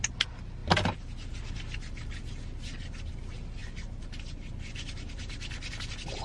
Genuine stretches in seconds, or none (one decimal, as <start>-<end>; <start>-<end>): 0.0-6.2